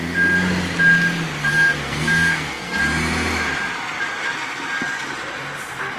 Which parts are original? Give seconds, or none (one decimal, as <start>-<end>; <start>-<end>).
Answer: 0.0-1.4; 2.8-6.0